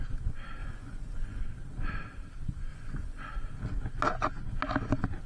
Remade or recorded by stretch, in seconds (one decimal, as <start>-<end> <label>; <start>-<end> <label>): 0.0-0.6 recorded; 0.6-1.4 remade; 1.4-2.7 recorded; 2.7-3.3 remade; 3.3-5.3 recorded